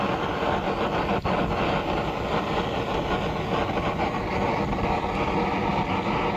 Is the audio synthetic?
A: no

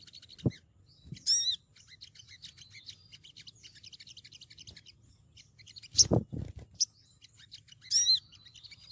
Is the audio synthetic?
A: no